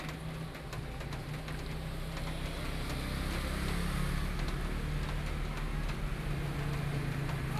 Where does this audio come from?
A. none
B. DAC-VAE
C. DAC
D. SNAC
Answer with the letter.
A